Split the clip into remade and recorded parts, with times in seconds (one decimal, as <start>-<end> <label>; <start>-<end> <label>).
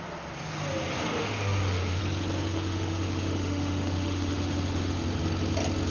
0.0-1.2 recorded; 1.2-2.0 remade; 2.0-2.5 recorded; 2.5-4.9 remade; 4.9-5.9 recorded